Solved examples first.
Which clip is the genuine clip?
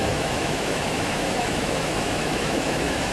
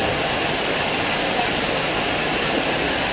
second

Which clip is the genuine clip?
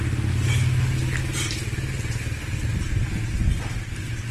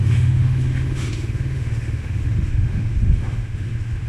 first